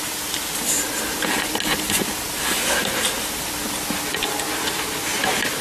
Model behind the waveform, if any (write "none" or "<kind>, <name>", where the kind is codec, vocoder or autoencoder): none